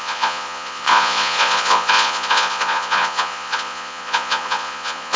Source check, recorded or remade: remade